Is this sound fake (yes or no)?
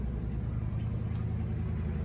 no